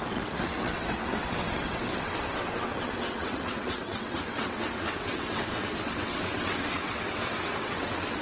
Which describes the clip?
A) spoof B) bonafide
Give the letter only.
A